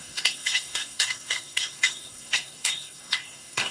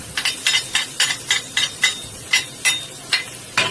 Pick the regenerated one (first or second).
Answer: first